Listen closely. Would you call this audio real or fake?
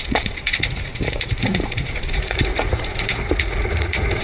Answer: fake